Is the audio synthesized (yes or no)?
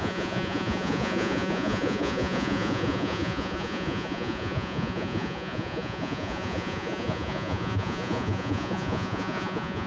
yes